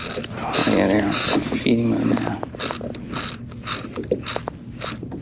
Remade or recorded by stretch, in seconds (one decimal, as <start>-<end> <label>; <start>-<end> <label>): 0.0-5.2 recorded